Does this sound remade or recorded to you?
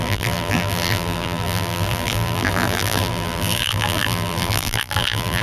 remade